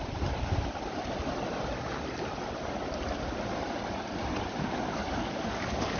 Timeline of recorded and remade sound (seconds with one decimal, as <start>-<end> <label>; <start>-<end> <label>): 0.0-4.5 recorded; 4.5-6.0 remade